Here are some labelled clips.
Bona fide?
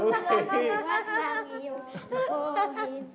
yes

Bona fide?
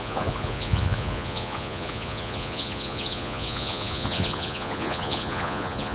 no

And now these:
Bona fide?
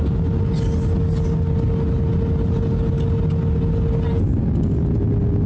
yes